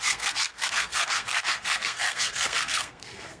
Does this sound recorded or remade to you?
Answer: remade